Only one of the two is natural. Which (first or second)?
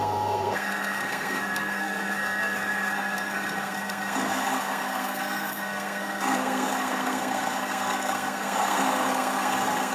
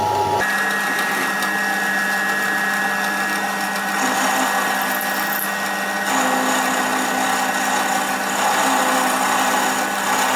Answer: second